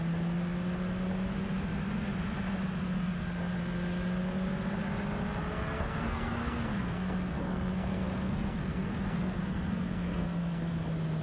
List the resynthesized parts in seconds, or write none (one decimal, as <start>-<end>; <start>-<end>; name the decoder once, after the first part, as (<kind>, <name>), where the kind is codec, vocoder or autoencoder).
5.5-10.7 (codec, SNAC)